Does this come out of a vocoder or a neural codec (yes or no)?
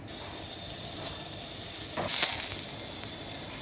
no